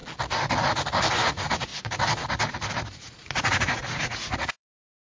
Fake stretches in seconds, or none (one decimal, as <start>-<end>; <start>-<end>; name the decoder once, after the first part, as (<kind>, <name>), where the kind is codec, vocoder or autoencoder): 1.1-1.7 (vocoder, Vocos); 2.8-5.1